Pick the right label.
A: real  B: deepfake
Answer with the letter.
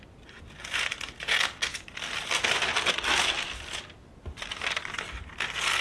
A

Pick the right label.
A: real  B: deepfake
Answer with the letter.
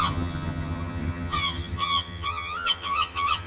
B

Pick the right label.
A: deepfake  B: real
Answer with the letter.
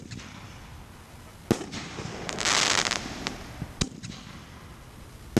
B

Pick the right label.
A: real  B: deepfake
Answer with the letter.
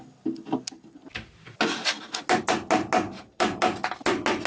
A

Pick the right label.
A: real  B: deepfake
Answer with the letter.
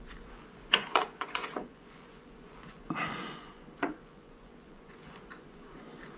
B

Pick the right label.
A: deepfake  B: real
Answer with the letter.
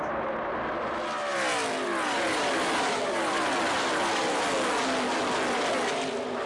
B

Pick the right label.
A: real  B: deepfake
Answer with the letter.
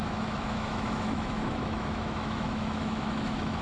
B